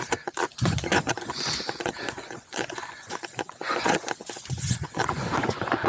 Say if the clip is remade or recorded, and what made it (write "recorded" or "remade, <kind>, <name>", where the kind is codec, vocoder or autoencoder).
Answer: remade, vocoder, Vocos